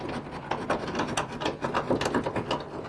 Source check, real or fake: real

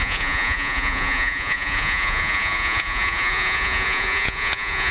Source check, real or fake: fake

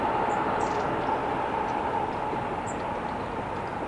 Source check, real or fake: real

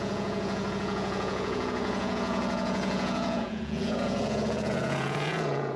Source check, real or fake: fake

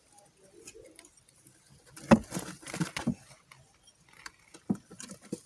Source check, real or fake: real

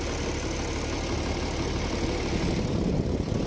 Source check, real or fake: real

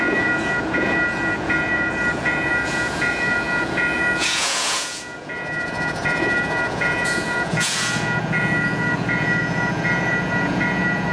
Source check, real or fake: fake